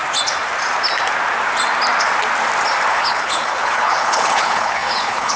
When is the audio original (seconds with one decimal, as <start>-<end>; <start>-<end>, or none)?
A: 0.0-2.9